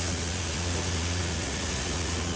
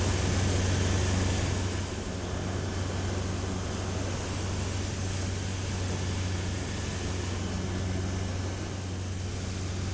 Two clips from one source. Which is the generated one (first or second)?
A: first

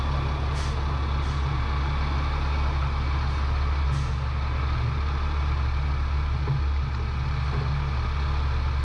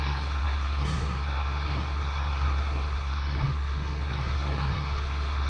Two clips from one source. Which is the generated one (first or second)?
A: second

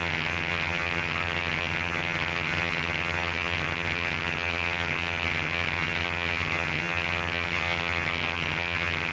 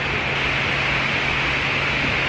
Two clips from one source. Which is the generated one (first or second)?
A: first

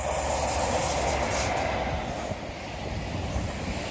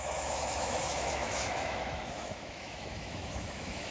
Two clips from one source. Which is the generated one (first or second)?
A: second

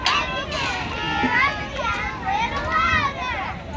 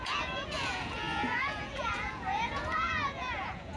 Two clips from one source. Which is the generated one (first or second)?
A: second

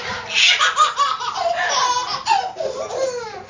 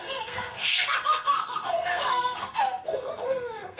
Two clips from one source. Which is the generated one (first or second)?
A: second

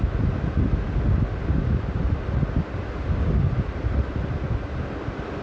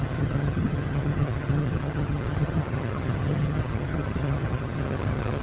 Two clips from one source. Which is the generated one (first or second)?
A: second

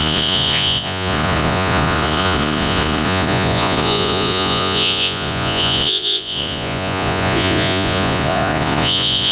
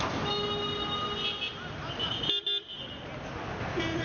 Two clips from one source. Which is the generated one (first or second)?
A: first